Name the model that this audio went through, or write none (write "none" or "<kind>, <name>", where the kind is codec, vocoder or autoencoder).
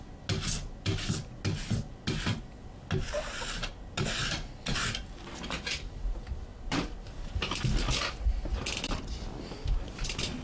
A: none